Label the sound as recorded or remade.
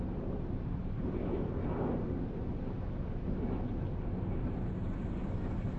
recorded